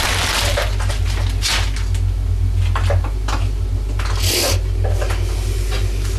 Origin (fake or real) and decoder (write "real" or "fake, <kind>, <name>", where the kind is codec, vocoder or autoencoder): real